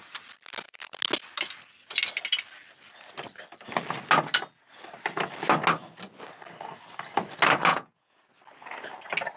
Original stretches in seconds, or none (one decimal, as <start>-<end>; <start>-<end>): 0.0-7.7; 8.3-9.4

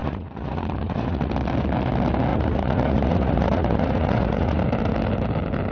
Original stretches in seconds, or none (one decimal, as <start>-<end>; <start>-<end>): 1.3-2.3; 4.6-5.7

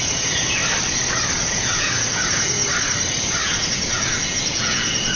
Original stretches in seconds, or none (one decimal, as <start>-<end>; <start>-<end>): 0.6-1.5; 2.6-3.4

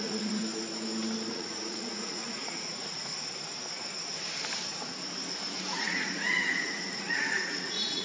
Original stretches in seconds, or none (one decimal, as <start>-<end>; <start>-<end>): 0.4-1.3; 3.1-5.6